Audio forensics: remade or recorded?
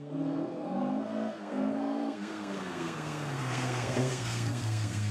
remade